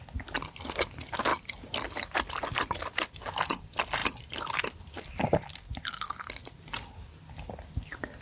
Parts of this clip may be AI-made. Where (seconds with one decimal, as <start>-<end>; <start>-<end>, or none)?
1.3-3.2; 4.0-6.3